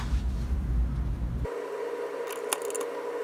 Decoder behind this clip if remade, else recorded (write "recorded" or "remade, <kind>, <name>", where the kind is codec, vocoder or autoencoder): recorded